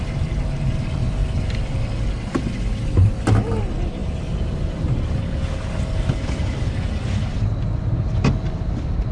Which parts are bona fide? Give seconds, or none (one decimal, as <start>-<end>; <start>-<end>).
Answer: 0.0-9.1